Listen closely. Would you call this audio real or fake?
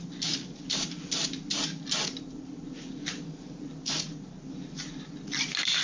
real